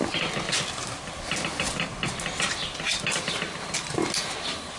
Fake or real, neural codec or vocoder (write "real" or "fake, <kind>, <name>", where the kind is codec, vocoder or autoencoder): real